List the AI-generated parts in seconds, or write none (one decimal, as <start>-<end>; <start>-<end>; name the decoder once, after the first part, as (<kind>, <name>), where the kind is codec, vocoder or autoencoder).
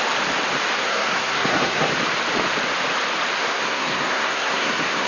0.8-1.9 (codec, SNAC); 3.4-5.1